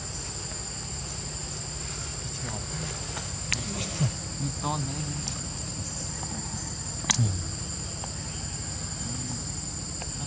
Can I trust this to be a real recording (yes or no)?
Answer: yes